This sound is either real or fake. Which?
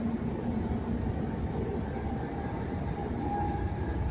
fake